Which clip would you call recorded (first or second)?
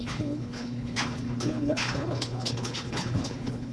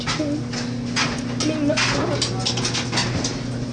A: second